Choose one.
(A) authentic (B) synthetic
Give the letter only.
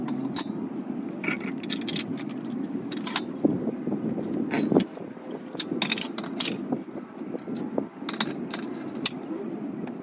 A